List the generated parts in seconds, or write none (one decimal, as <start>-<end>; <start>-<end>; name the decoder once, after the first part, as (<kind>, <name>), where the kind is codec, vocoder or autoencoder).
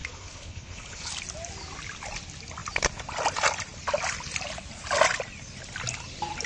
0.0-1.1 (codec, HILCodec)